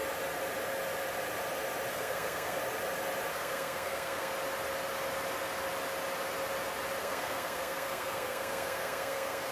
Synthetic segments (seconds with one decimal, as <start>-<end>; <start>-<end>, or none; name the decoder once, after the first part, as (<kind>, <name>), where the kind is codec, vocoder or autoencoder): 1.9-2.6 (codec, SNAC); 3.3-4.3; 7.0-9.5